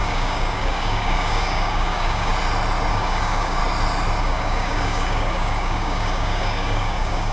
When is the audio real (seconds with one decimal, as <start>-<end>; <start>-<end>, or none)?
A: 2.3-2.9; 3.6-4.2

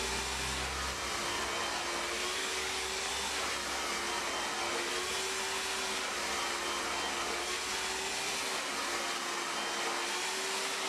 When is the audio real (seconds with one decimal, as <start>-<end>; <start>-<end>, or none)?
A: 0.0-2.4; 3.1-10.9